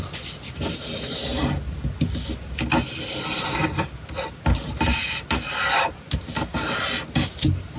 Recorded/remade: recorded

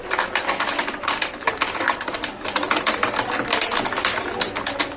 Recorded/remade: remade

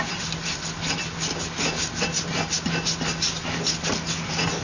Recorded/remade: recorded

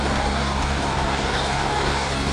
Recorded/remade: remade